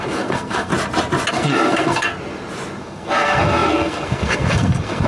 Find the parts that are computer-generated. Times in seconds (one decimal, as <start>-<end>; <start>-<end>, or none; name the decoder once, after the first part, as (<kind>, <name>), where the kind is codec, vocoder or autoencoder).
0.0-0.7 (codec, SNAC); 1.3-2.1; 2.8-5.1